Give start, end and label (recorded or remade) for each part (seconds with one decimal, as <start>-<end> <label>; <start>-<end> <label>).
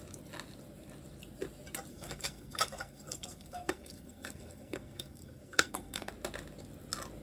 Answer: 0.0-1.9 recorded; 1.9-6.1 remade; 6.1-7.2 recorded